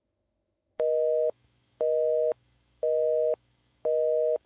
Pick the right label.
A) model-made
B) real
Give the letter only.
A